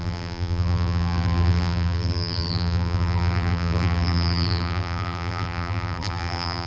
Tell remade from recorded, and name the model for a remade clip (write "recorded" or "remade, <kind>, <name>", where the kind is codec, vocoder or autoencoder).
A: remade, vocoder, BigVGAN v2